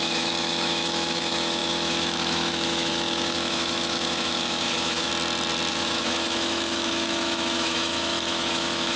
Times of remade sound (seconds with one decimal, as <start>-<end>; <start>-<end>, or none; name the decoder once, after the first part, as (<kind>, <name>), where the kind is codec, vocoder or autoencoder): 0.0-5.1 (autoencoder, DAC-VAE); 5.7-9.0